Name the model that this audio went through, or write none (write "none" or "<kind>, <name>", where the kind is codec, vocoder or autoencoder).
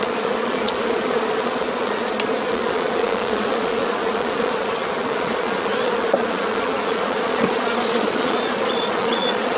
vocoder, Vocos